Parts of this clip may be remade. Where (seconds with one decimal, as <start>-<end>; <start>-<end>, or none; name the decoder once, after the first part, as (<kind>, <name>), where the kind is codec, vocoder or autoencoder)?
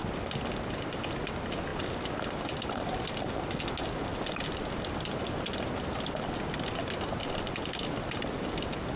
none